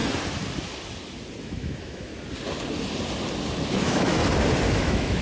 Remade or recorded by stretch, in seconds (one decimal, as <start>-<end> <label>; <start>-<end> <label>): 0.0-1.4 recorded; 1.4-2.1 remade; 2.1-3.7 recorded; 3.7-4.2 remade; 4.2-4.7 recorded; 4.7-5.2 remade